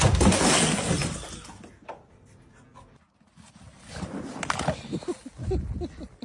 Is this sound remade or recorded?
recorded